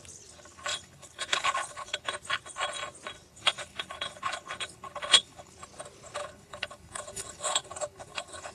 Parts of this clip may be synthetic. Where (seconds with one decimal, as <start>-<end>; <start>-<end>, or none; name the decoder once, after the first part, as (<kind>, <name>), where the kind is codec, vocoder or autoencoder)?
0.7-2.1 (codec, HILCodec); 3.3-5.5; 6.2-8.5